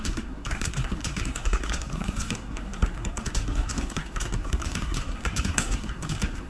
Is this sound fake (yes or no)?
yes